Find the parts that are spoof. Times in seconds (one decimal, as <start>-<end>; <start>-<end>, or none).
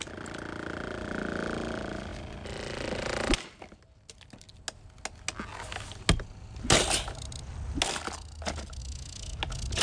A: 8.8-9.4